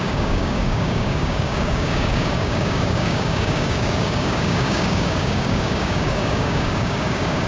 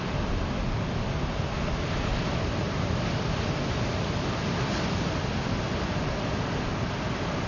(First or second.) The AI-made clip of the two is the first